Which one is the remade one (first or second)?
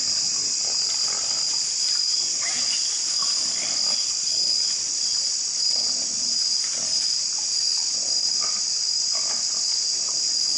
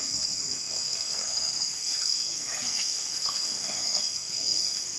second